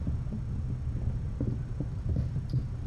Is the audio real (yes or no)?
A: yes